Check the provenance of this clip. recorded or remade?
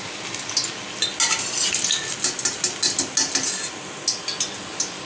recorded